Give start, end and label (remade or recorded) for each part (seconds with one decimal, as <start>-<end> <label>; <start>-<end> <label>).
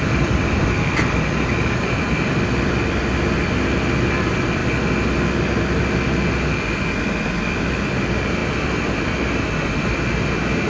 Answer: 0.0-4.6 remade; 4.6-7.0 recorded; 7.0-10.7 remade